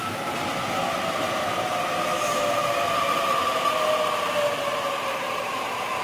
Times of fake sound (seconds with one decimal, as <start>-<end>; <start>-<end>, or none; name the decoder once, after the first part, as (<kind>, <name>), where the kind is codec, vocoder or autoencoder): 0.0-2.2 (vocoder, BigVGAN v2); 2.6-3.4